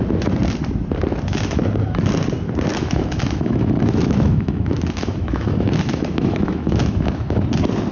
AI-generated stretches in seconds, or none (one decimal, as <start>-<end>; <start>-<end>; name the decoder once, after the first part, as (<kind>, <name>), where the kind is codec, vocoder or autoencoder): 2.7-7.4 (autoencoder, DAC-VAE)